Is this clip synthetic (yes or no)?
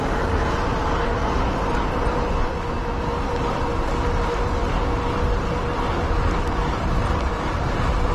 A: no